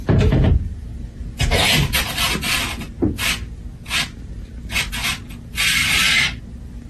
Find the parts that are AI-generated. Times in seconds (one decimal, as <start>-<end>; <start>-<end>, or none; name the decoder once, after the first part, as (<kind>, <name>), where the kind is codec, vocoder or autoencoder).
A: 0.7-2.0 (vocoder, BigVGAN v2); 5.8-6.4